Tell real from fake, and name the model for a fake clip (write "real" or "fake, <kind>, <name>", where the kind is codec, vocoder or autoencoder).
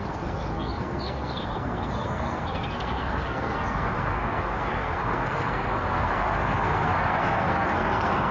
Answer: fake, codec, SNAC